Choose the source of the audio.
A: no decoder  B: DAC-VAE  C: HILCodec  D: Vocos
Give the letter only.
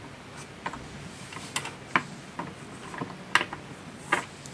A